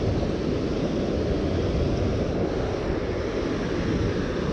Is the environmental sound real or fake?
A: real